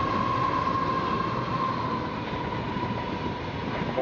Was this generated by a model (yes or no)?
no